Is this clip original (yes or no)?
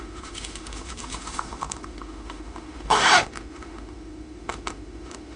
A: no